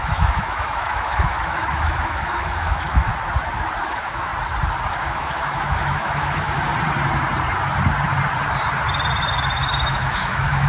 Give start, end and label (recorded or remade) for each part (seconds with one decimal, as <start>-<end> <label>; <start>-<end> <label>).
0.0-3.1 remade; 3.1-3.8 recorded; 3.8-4.3 remade; 4.3-4.9 recorded; 4.9-6.7 remade; 6.7-9.9 recorded; 9.9-10.7 remade